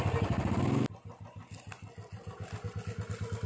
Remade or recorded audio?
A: recorded